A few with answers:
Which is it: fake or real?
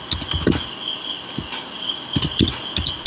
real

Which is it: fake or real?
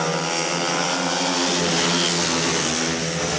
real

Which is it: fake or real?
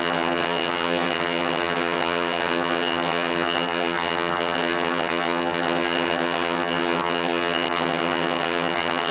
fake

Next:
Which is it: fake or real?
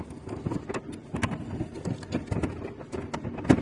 real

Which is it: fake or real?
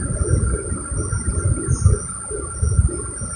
fake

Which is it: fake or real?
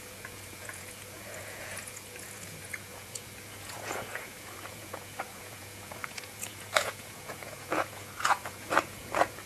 fake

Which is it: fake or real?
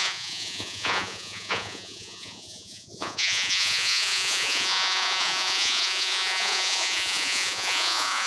fake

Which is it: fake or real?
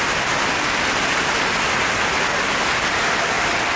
real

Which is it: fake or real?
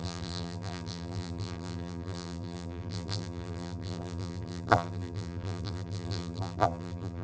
fake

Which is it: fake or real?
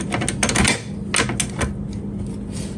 real